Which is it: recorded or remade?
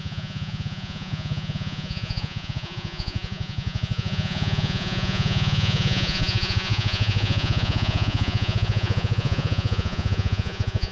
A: remade